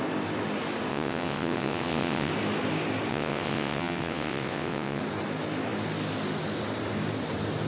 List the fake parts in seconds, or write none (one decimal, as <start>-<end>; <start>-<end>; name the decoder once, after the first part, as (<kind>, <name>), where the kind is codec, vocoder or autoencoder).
0.9-2.3 (vocoder, WaveNeXt); 3.1-5.0

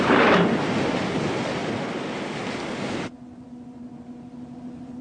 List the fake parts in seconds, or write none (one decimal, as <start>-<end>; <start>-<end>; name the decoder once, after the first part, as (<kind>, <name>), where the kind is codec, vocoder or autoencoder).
none

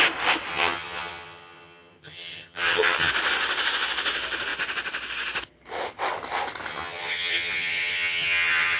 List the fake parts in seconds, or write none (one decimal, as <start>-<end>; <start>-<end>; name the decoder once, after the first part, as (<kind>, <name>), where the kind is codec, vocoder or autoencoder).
0.5-3.1 (vocoder, HiFi-GAN); 6.7-8.8

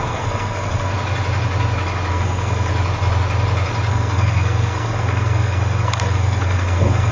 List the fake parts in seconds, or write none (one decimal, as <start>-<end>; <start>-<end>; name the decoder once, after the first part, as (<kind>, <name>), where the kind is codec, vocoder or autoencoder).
0.0-0.9 (codec, SNAC); 2.1-2.7; 3.9-7.1

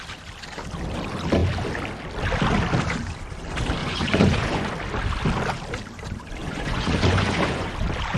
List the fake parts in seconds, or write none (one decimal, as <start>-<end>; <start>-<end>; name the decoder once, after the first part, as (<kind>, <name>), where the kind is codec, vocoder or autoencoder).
3.8-4.7 (vocoder, Vocos); 6.4-7.7

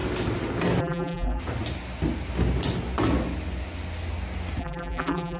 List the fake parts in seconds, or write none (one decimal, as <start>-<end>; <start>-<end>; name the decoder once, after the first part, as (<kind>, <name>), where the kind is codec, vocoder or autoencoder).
0.8-1.4 (vocoder, BigVGAN v2); 4.6-5.4

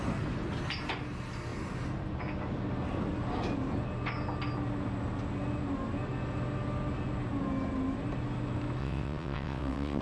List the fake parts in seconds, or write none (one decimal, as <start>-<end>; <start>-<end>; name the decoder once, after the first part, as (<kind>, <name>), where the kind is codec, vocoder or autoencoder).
8.8-10.0 (vocoder, WaveNeXt)

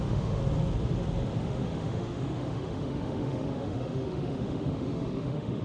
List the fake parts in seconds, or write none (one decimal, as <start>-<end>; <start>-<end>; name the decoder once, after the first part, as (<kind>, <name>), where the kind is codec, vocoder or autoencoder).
0.0-0.4 (autoencoder, DAC-VAE); 1.4-5.6